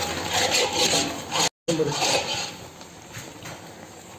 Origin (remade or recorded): recorded